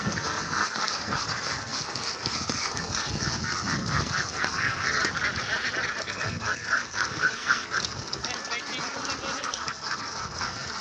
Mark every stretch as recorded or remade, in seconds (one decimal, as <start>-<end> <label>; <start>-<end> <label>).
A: 0.0-5.0 remade; 5.0-6.0 recorded; 6.0-8.2 remade; 8.2-9.4 recorded; 9.4-10.8 remade